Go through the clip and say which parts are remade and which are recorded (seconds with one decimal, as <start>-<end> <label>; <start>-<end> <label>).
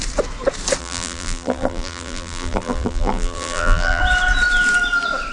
0.0-0.8 recorded; 0.8-4.0 remade; 4.0-5.3 recorded